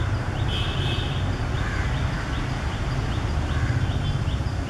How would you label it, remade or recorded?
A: recorded